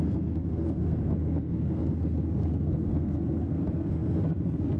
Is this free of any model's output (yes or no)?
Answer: no